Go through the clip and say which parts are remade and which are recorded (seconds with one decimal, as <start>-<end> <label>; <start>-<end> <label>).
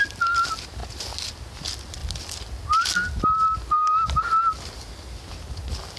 0.0-6.0 recorded